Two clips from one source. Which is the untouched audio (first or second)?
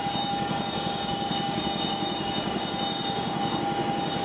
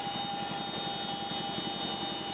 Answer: second